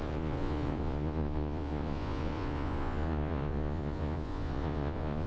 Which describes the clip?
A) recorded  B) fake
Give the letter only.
B